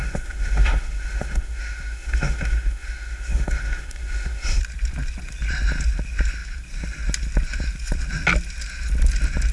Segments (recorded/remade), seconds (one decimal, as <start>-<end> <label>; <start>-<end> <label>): 0.0-4.6 remade; 4.6-9.5 recorded